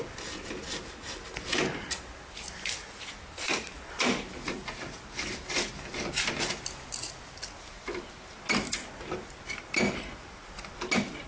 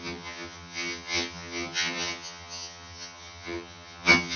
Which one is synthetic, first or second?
second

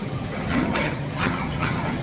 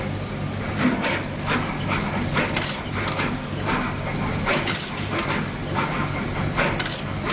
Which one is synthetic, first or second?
first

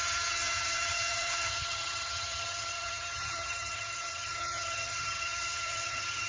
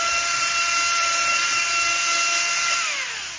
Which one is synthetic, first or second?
first